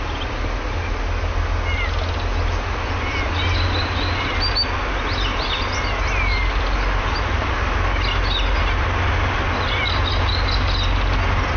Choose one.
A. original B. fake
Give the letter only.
A